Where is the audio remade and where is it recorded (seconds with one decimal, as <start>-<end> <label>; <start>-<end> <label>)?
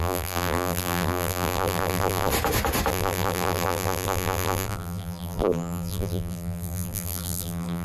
0.0-2.3 remade; 2.3-2.9 recorded; 2.9-7.8 remade